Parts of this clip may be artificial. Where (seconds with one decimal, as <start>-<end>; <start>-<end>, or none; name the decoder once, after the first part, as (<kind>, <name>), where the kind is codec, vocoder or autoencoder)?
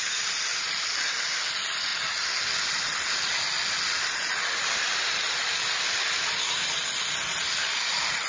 none